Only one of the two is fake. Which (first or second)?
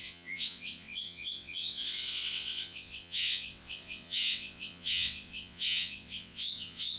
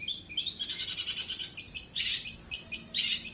first